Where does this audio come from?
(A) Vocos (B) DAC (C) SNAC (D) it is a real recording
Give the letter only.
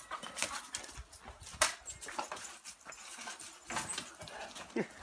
D